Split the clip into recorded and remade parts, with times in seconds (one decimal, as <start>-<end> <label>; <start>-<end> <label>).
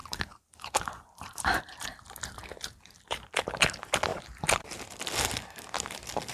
0.0-1.6 remade; 1.6-2.4 recorded; 2.4-3.4 remade; 3.4-4.1 recorded; 4.1-4.8 remade; 4.8-6.3 recorded